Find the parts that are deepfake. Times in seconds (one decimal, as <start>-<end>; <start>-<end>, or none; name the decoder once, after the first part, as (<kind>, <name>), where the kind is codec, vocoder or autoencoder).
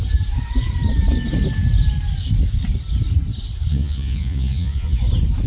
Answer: 3.7-5.0 (vocoder, Vocos)